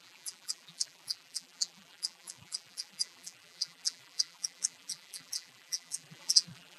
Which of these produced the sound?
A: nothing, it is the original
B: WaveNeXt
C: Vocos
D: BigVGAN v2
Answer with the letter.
D